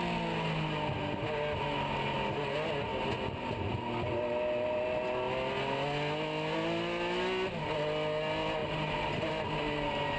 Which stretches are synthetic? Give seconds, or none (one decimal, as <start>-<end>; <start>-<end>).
none